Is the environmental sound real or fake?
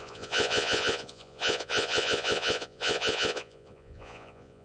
fake